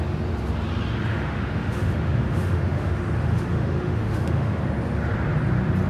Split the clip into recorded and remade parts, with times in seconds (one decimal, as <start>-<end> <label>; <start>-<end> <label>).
0.0-1.1 recorded; 1.1-4.6 remade; 4.6-5.9 recorded